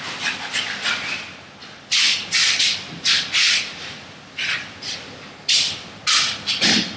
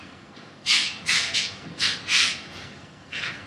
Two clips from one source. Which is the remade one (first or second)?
second